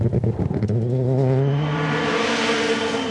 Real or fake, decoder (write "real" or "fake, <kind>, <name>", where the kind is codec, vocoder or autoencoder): real